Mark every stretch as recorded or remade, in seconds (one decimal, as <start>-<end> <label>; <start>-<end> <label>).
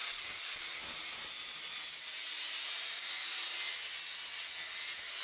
0.0-3.1 remade; 3.1-5.2 recorded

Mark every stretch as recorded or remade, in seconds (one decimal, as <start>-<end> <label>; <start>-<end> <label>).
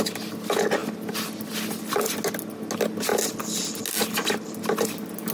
0.0-5.3 recorded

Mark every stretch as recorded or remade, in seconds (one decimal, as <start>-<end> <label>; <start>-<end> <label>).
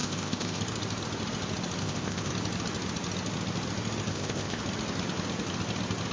0.0-0.6 remade; 0.6-1.8 recorded; 1.8-2.3 remade; 2.3-4.1 recorded; 4.1-4.6 remade; 4.6-6.1 recorded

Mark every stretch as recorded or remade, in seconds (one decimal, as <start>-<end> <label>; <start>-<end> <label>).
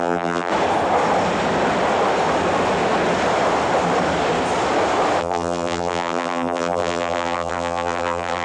0.0-0.5 remade; 0.5-5.2 recorded; 5.2-8.4 remade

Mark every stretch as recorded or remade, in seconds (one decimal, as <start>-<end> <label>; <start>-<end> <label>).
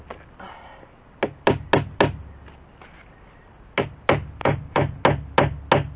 0.0-4.4 recorded; 4.4-5.0 remade; 5.0-6.0 recorded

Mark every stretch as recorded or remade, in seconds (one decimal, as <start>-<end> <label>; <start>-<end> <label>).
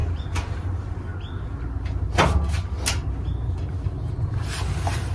0.0-0.5 recorded; 0.5-1.1 remade; 1.1-4.2 recorded; 4.2-5.1 remade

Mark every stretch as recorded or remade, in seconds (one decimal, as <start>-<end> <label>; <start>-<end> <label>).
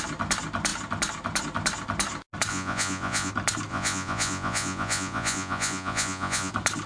0.0-2.5 recorded; 2.5-3.3 remade; 3.3-3.7 recorded; 3.7-6.5 remade; 6.5-6.9 recorded